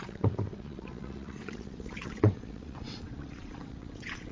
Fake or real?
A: fake